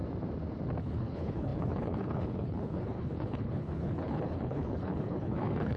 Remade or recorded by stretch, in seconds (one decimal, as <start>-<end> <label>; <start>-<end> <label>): 0.0-0.8 recorded; 0.8-5.8 remade